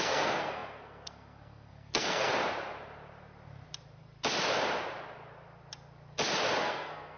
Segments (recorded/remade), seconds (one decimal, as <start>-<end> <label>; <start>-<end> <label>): 0.0-2.3 remade; 2.3-6.6 recorded; 6.6-7.2 remade